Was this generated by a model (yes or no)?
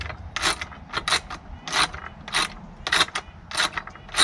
no